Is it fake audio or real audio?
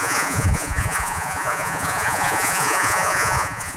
fake